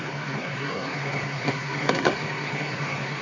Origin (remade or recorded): remade